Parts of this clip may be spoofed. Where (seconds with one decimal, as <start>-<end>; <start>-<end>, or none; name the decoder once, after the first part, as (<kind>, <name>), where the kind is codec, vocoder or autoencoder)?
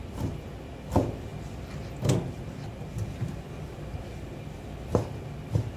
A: none